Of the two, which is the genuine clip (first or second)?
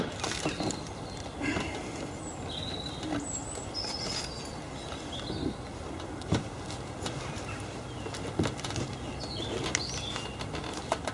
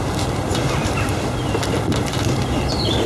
first